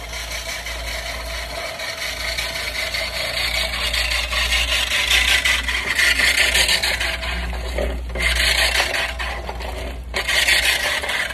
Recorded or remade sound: recorded